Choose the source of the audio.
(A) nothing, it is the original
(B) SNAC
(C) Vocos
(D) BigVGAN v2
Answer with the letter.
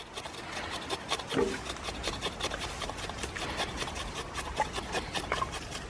A